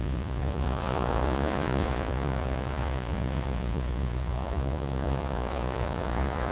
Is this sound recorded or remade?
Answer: remade